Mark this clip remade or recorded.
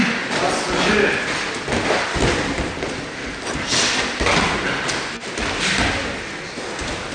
recorded